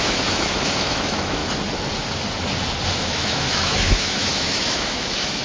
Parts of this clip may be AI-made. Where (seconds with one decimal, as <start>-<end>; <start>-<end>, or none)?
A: 0.0-1.4; 2.9-5.4